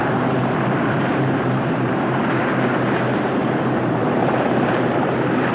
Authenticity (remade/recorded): remade